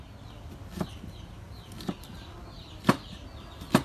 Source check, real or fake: real